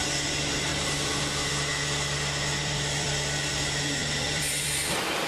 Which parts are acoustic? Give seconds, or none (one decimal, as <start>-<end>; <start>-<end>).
0.0-2.6; 3.1-4.0; 4.7-5.3